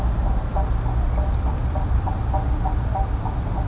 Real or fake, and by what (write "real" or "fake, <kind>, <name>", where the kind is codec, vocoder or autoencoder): real